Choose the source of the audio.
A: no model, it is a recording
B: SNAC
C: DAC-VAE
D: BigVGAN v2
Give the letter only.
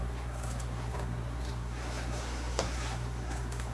B